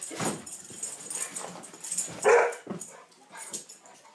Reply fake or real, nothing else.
real